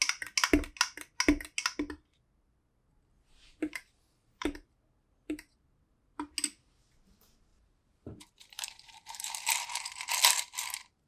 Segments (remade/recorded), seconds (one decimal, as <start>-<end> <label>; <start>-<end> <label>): 0.0-3.6 recorded; 3.6-6.3 remade; 6.3-7.5 recorded; 7.5-9.4 remade; 9.4-11.1 recorded